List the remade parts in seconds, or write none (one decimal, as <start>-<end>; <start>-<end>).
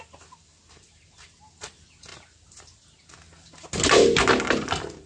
none